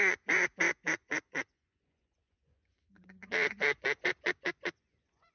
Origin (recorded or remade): remade